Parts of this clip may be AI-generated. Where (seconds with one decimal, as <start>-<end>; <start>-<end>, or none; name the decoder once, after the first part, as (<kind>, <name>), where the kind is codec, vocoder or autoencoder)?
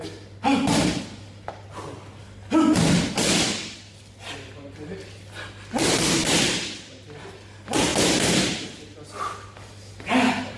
6.2-7.2 (vocoder, BigVGAN v2); 7.9-8.8